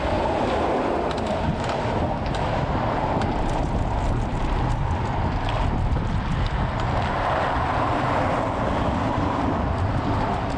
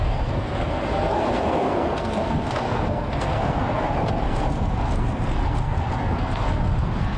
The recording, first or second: first